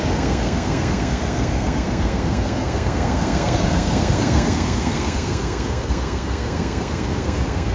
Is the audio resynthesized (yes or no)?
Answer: yes